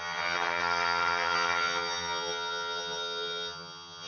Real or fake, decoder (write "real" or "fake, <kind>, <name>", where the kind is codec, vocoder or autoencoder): fake, vocoder, HiFi-GAN